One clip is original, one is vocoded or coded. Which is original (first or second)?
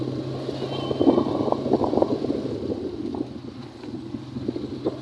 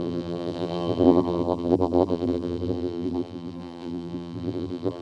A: first